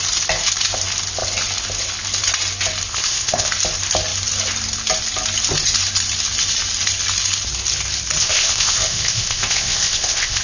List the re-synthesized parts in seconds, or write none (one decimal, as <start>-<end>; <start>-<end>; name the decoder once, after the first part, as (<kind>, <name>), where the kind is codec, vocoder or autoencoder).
2.9-3.5 (codec, ZipCodec); 8.2-10.4